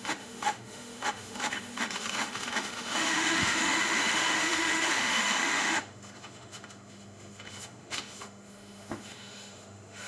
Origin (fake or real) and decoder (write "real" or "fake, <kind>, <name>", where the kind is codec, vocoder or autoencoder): fake, autoencoder, DAC-VAE